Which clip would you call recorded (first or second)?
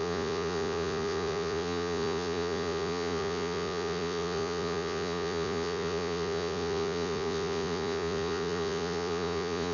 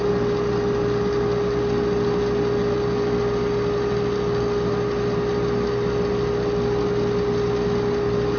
second